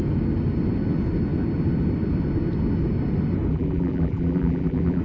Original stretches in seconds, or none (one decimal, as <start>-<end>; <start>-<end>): 0.0-3.5